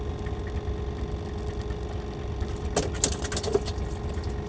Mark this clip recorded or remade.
recorded